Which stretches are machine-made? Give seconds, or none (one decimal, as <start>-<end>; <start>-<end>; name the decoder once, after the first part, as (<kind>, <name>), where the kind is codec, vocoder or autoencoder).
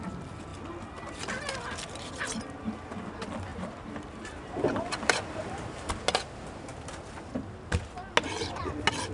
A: 3.5-5.9 (vocoder, BigVGAN v2)